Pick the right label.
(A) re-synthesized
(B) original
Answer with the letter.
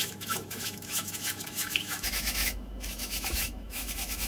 A